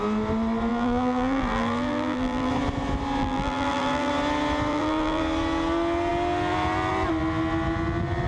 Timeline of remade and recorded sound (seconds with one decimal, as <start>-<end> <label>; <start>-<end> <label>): 0.0-0.7 recorded; 0.7-2.5 remade; 2.5-3.2 recorded; 3.2-4.1 remade; 4.1-4.7 recorded; 4.7-5.2 remade; 5.2-8.3 recorded